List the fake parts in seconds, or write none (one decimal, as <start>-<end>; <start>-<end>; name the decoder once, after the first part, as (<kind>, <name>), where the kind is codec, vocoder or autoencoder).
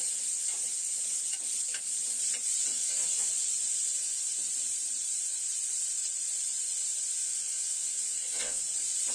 2.7-3.3 (vocoder, WaveNeXt); 7.2-8.6